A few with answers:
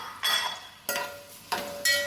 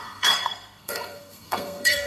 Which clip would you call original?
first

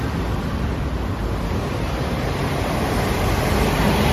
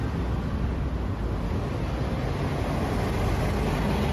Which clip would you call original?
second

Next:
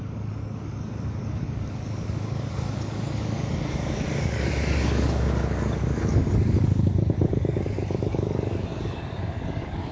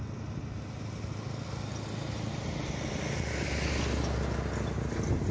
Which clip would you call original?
second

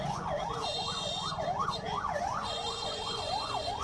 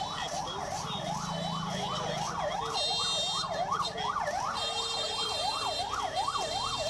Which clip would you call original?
second